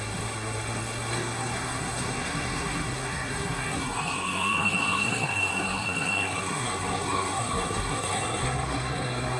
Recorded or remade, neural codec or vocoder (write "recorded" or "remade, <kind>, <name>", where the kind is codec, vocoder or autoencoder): remade, codec, SNAC